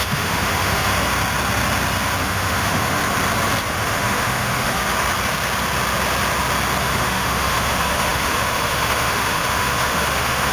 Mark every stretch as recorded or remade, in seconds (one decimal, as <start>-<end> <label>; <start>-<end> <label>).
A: 0.0-0.9 remade; 0.9-2.2 recorded; 2.2-3.0 remade; 3.0-3.7 recorded; 3.7-4.8 remade; 4.8-6.8 recorded; 6.8-10.5 remade